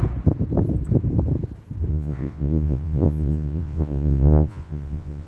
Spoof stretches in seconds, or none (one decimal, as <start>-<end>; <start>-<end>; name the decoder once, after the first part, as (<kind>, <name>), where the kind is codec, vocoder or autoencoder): 1.9-5.3 (vocoder, Vocos)